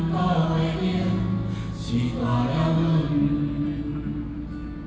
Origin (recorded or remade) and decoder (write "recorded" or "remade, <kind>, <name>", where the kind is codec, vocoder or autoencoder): recorded